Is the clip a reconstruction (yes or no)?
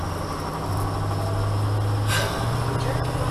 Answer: no